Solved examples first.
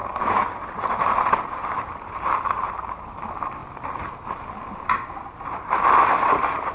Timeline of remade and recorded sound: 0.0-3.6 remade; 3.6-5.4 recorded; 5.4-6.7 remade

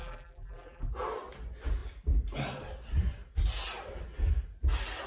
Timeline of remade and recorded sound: 0.0-0.9 remade; 0.9-5.1 recorded

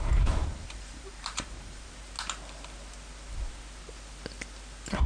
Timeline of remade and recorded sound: 0.0-0.4 recorded; 0.4-1.9 remade; 1.9-5.1 recorded

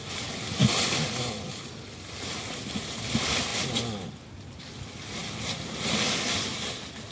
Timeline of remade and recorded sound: 0.0-7.1 recorded